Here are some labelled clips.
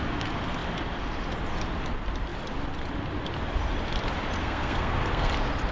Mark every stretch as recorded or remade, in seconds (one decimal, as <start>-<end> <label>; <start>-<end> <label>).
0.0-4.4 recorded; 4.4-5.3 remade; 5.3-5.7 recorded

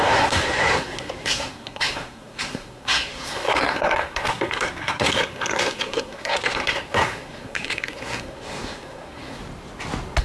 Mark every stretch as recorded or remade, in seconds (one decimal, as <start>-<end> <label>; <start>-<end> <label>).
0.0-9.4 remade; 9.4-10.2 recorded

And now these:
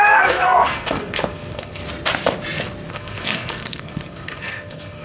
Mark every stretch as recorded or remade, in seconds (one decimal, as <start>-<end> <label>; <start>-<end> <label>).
0.0-1.8 remade; 1.8-2.9 recorded; 2.9-5.0 remade

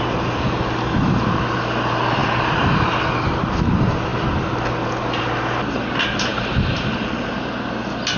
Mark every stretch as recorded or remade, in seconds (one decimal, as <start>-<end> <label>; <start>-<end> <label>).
0.0-8.2 recorded

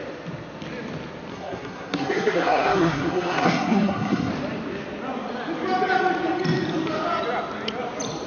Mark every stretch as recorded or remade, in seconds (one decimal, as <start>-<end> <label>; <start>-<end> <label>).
0.0-1.3 recorded; 1.3-4.3 remade; 4.3-8.3 recorded